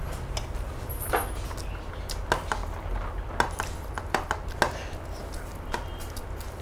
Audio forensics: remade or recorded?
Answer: recorded